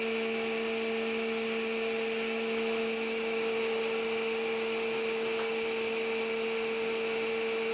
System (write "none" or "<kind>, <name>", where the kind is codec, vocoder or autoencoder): none